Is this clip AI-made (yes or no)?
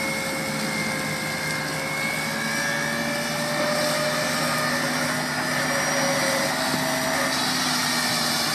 no